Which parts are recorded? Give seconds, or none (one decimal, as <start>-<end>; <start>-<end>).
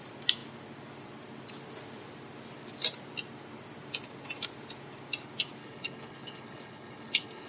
0.0-5.6